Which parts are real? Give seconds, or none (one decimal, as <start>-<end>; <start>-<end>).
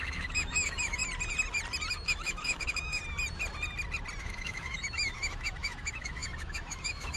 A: 1.0-1.9; 3.0-4.2